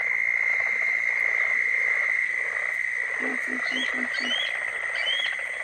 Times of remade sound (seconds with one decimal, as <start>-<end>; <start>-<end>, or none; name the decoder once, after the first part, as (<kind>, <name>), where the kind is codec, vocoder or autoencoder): 0.5-1.1 (autoencoder, DAC-VAE); 3.3-3.9